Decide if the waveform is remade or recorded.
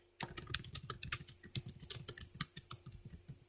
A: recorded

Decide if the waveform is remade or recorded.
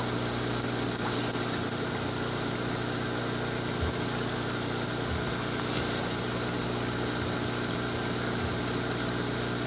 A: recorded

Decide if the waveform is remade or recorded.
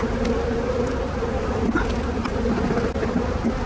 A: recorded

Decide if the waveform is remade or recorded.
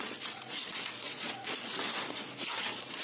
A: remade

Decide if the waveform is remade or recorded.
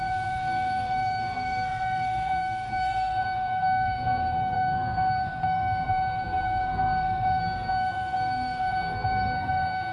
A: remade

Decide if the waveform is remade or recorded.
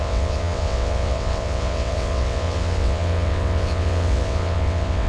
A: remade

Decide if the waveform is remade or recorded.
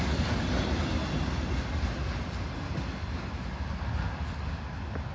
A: recorded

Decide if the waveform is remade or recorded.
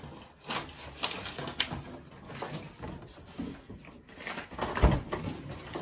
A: recorded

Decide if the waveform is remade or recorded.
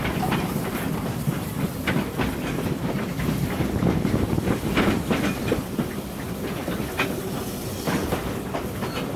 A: remade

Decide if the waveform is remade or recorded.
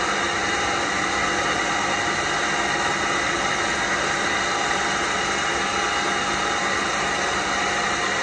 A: recorded